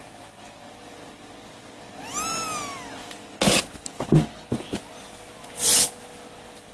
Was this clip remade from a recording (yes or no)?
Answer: no